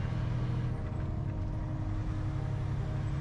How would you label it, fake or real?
real